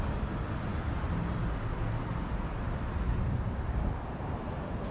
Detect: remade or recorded recorded